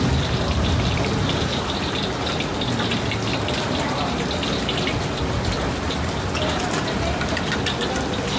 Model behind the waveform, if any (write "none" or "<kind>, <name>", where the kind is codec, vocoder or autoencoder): none